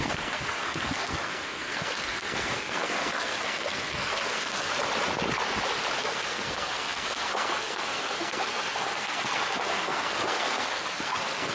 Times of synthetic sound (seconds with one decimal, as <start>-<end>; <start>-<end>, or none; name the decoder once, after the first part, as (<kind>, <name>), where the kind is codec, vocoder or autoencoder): 0.0-4.7 (codec, SNAC); 6.0-11.5